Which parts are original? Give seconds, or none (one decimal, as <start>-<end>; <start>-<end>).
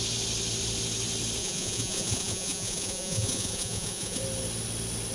0.0-1.4; 4.2-5.1